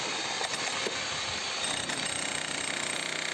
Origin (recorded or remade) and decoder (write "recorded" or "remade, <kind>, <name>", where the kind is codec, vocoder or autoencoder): recorded